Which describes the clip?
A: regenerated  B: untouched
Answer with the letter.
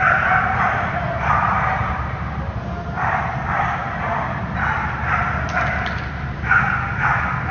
B